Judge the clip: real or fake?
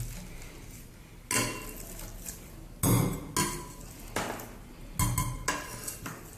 real